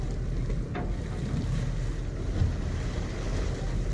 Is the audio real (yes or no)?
yes